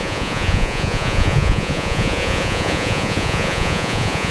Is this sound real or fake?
fake